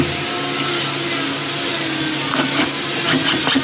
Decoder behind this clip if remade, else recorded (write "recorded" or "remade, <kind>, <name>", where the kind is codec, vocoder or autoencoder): recorded